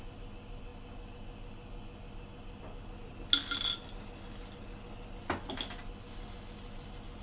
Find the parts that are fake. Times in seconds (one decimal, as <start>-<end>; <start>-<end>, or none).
none